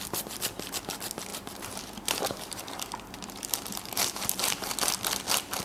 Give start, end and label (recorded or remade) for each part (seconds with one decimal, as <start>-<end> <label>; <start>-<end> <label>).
0.0-1.3 recorded; 1.3-4.7 remade; 4.7-5.6 recorded

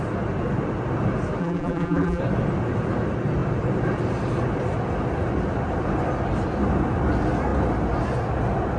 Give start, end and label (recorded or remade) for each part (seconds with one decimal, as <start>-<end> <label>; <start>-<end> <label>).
0.0-1.4 recorded; 1.4-2.2 remade; 2.2-8.8 recorded

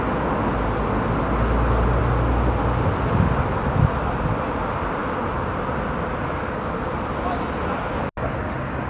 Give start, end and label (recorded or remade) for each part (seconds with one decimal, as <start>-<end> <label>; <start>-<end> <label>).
0.0-8.9 recorded